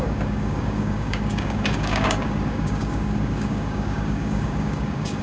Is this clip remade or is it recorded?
remade